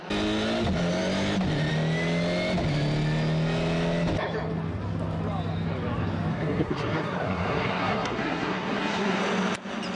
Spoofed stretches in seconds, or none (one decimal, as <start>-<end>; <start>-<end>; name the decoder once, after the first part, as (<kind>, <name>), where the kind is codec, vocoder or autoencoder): 6.3-9.2 (codec, SNAC)